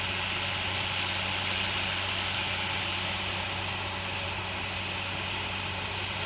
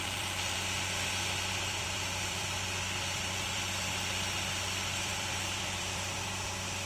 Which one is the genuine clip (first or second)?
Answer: first